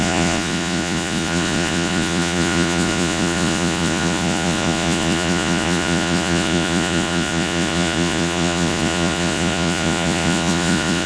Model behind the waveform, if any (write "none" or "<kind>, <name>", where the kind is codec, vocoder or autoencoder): vocoder, Vocos